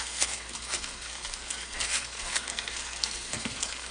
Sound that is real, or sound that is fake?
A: fake